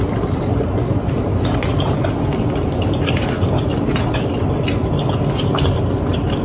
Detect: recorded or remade recorded